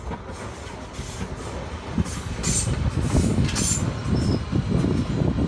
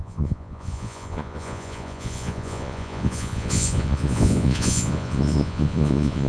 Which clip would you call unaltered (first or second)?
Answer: first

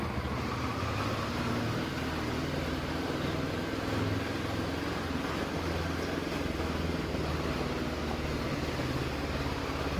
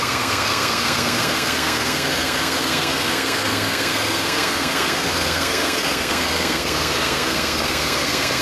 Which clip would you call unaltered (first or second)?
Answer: first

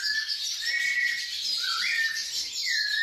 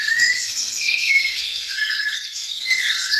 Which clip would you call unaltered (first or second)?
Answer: first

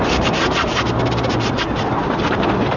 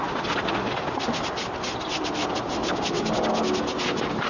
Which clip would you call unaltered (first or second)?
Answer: second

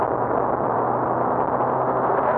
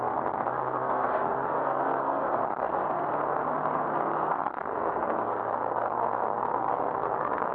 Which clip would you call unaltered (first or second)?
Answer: first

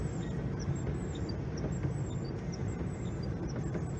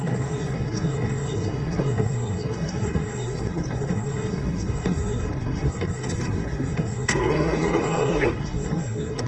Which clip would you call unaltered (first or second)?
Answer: first